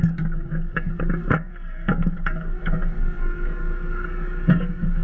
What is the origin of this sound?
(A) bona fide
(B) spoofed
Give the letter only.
B